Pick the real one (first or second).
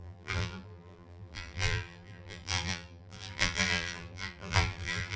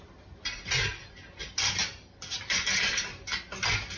second